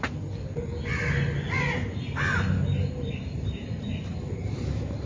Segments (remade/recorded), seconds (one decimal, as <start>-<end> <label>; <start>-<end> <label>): 0.0-5.1 recorded